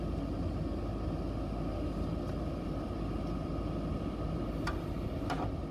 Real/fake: real